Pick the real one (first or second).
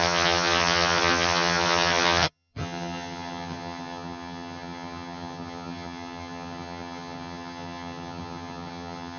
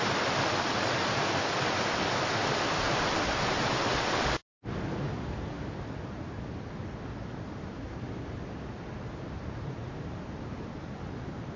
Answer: second